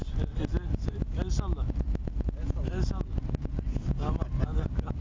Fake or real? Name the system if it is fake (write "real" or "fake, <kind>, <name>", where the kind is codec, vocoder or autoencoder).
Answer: real